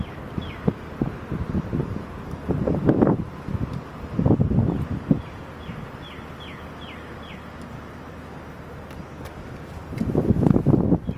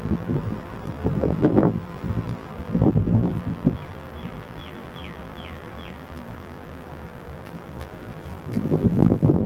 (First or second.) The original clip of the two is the first